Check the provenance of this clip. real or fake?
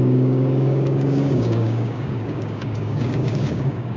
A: fake